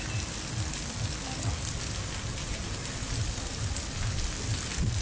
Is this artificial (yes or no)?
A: no